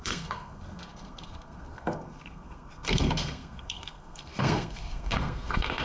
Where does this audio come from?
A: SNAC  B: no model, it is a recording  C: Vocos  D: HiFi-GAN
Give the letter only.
A